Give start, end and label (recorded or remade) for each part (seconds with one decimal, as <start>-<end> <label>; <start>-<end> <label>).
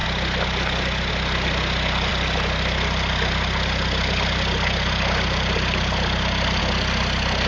0.0-7.5 recorded